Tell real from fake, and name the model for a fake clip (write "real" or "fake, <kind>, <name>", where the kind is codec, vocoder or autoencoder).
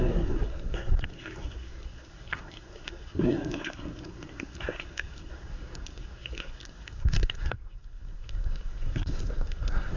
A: fake, codec, SNAC